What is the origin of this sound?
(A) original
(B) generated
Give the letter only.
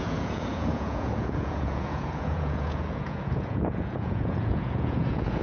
B